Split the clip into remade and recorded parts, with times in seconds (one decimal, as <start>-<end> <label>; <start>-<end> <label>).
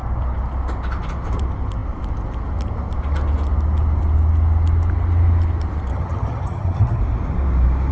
0.0-5.9 recorded; 5.9-7.0 remade; 7.0-7.9 recorded